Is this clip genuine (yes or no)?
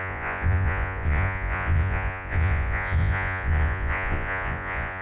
no